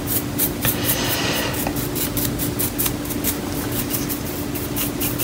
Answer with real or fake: real